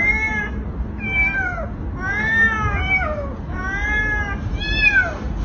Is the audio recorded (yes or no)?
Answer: yes